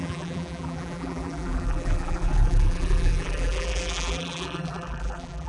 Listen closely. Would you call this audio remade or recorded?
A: remade